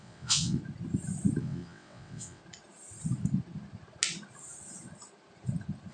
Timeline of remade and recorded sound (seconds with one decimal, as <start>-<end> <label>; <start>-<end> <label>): 0.0-0.6 remade; 0.6-1.4 recorded; 1.4-2.4 remade; 2.4-5.9 recorded